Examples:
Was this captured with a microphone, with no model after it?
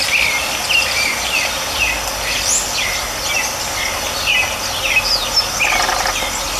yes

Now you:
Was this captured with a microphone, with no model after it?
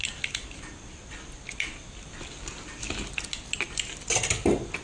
yes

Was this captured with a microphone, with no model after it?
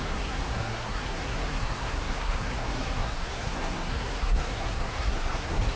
no